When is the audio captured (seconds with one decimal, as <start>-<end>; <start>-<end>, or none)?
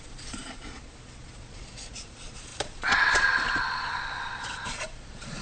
none